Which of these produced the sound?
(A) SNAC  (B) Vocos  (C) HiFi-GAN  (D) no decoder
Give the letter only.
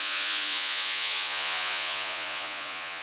B